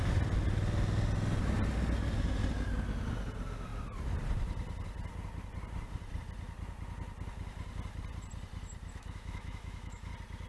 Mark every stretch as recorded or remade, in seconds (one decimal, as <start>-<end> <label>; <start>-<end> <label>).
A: 0.0-8.9 recorded; 8.9-10.1 remade; 10.1-10.5 recorded